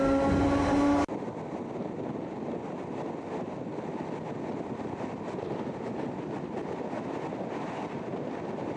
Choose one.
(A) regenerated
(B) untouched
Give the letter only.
B